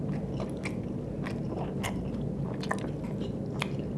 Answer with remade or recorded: recorded